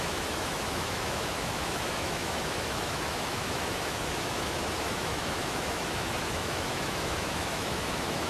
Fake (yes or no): yes